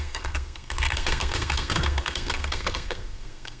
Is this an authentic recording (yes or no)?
no